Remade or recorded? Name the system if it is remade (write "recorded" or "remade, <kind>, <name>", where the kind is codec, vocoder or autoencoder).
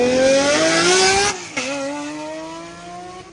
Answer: recorded